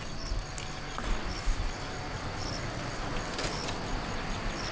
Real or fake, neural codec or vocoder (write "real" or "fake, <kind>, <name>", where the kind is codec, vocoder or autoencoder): real